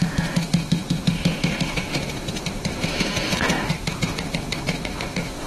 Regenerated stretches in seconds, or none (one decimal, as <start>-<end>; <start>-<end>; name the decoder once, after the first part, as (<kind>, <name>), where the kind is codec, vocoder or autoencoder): 0.0-5.5 (autoencoder, DAC-VAE)